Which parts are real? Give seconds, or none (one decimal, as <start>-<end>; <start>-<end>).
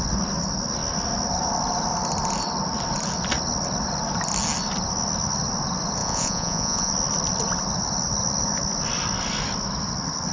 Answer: 0.0-6.0; 6.9-10.3